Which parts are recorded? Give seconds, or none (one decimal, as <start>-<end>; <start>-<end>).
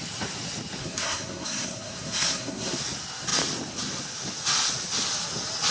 0.0-0.8; 2.8-5.7